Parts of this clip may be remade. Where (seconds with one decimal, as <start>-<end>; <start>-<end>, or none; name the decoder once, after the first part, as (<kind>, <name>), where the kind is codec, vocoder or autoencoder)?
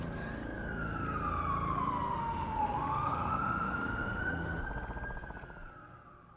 2.2-4.6 (autoencoder, DAC-VAE)